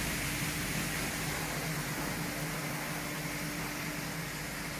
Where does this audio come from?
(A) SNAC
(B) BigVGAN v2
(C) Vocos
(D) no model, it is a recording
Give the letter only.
D